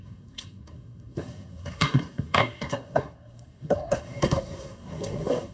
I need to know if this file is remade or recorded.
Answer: remade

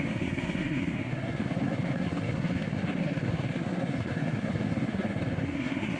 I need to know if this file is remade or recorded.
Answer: remade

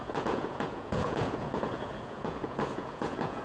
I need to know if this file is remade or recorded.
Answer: remade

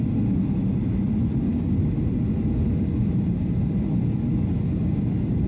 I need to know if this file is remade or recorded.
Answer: recorded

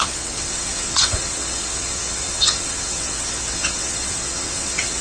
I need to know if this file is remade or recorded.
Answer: remade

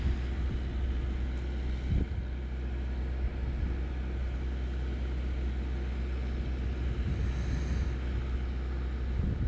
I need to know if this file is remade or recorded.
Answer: recorded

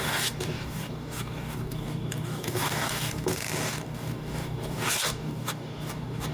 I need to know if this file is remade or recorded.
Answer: remade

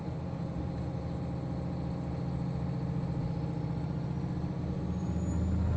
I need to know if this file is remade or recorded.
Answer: recorded